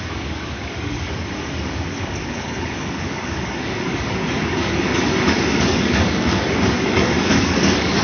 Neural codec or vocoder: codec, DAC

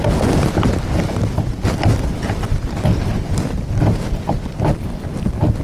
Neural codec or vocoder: none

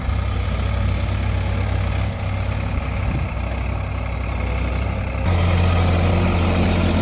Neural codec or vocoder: none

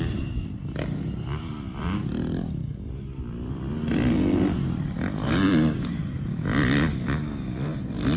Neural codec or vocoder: none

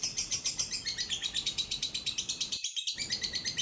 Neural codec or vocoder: none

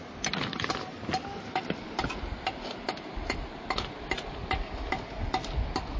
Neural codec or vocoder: none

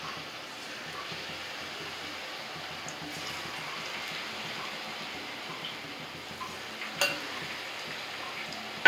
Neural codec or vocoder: none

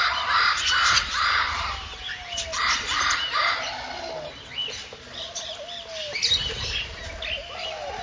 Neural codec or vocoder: none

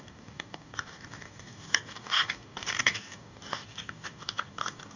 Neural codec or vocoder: codec, DAC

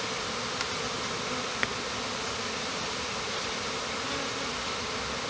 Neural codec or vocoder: none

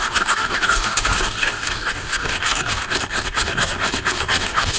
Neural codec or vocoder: codec, DAC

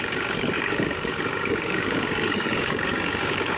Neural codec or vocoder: codec, DAC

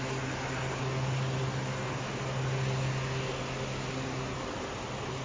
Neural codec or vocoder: none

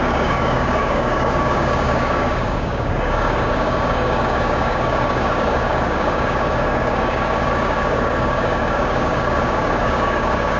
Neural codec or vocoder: codec, DAC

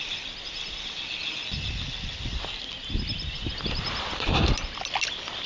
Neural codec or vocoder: none